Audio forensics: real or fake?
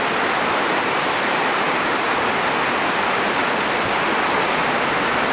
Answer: real